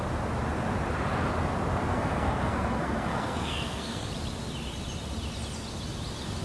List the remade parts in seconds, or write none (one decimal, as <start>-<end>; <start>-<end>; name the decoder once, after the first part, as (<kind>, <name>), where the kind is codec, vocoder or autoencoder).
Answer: 1.9-4.1 (codec, SNAC)